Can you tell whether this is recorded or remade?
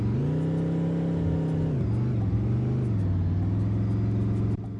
recorded